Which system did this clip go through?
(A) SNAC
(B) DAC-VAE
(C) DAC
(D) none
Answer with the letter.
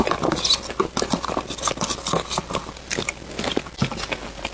D